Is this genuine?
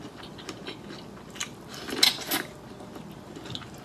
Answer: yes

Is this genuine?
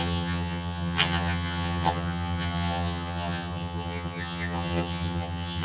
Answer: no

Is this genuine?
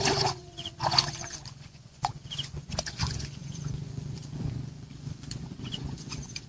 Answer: no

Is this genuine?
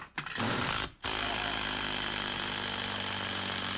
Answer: no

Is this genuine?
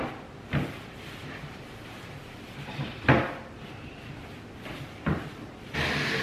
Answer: no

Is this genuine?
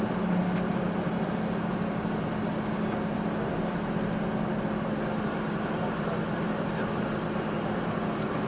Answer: yes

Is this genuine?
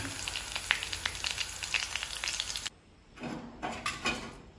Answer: yes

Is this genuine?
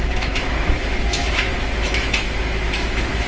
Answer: no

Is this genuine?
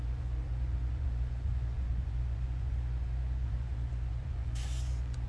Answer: no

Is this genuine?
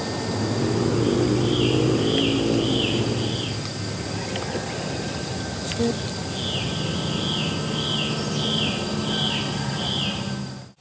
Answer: yes